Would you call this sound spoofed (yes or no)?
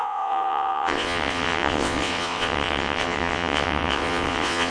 yes